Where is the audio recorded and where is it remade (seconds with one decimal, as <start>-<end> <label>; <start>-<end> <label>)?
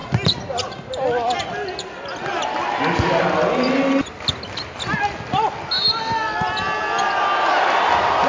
0.0-8.3 recorded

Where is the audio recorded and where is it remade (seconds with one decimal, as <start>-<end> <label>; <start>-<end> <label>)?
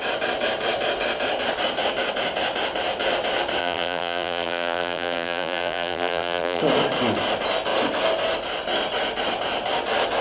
0.0-3.6 recorded; 3.6-6.6 remade; 6.6-10.2 recorded